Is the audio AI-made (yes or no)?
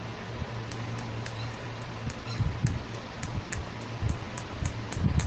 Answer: no